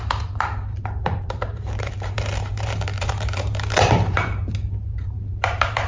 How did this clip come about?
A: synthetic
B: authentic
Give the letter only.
A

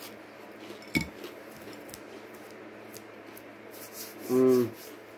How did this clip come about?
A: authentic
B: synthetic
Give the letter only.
A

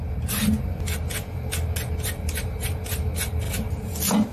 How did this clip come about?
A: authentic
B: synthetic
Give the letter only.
A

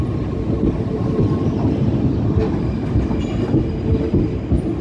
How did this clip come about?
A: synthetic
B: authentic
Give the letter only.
B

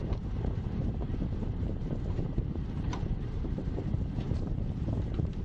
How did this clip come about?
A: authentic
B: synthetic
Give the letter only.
B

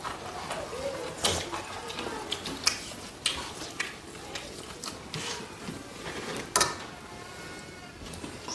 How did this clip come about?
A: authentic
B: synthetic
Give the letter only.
A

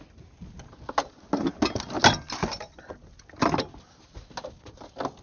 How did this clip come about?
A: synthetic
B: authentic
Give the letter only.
B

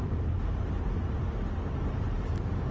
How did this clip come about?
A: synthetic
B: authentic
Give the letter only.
A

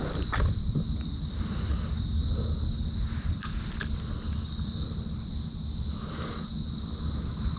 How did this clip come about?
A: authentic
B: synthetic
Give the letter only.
A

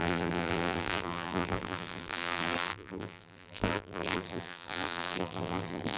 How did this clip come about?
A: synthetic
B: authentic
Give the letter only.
A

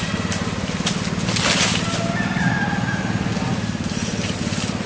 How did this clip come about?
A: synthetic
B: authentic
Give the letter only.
B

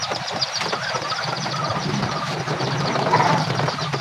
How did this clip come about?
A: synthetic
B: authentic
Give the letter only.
A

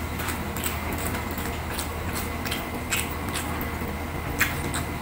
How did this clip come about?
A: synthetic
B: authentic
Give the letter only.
B